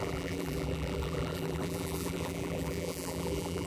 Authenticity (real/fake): fake